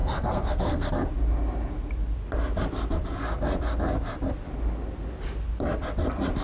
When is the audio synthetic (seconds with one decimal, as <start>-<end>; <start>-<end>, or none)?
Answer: 0.0-0.9